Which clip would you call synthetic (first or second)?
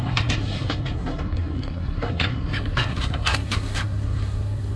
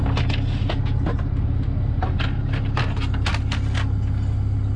first